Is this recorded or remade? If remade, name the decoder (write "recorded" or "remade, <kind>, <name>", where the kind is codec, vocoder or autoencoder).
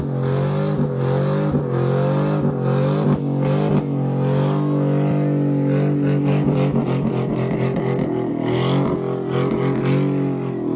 recorded